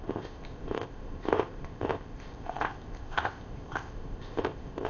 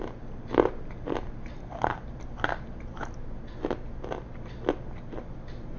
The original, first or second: second